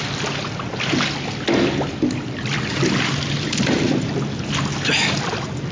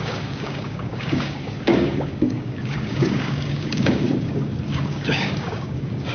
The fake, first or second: second